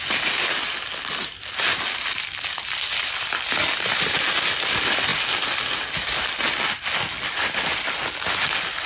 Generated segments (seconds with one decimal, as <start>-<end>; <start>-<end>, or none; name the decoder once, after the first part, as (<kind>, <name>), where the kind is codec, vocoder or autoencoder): none